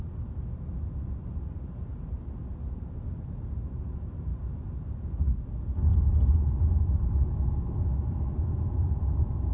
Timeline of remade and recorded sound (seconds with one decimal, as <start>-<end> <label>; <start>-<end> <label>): 0.0-9.5 recorded